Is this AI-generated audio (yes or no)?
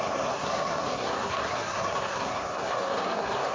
yes